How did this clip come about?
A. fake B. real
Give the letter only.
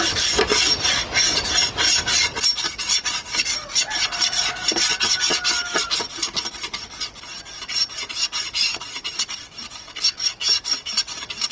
B